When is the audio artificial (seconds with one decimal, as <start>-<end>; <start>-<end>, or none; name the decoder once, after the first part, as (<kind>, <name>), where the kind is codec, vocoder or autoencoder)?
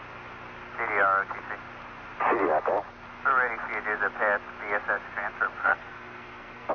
5.6-6.7 (codec, SNAC)